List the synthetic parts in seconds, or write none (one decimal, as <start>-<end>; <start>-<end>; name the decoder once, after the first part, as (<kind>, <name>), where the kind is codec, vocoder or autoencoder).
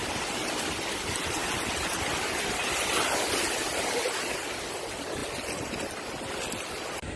none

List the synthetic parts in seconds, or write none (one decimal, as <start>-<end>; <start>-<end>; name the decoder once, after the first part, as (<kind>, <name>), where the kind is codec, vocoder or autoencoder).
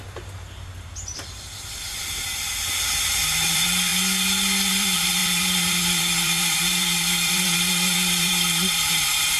0.0-3.9 (vocoder, BigVGAN v2); 4.7-9.4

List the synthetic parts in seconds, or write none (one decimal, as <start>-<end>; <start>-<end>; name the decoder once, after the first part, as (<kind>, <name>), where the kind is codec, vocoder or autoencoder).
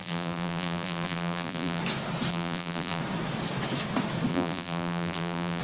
0.0-1.8 (vocoder, BigVGAN v2); 2.3-3.0; 4.3-5.6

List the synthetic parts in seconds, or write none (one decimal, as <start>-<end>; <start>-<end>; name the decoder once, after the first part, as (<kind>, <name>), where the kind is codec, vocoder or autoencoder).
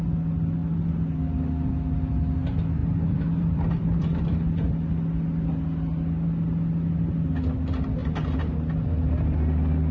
2.8-4.2 (vocoder, BigVGAN v2)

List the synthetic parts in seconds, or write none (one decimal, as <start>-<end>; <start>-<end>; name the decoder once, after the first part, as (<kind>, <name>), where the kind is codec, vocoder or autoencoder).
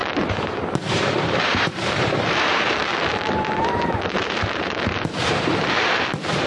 0.8-6.5 (vocoder, BigVGAN v2)